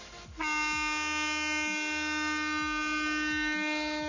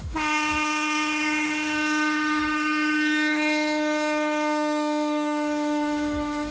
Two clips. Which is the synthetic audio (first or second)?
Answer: second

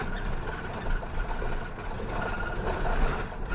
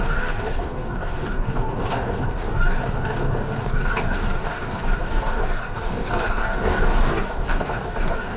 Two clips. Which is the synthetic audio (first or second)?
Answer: second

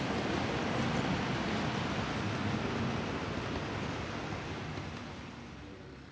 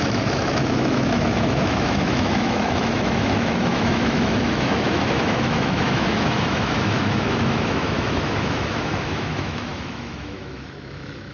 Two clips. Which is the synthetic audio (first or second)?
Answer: second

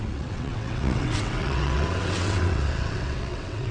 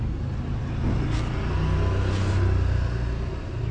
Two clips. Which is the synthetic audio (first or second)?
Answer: first